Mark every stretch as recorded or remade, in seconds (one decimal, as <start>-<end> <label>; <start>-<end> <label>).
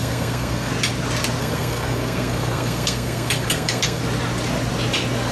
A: 0.0-0.7 remade; 0.7-1.4 recorded; 1.4-4.0 remade; 4.0-5.3 recorded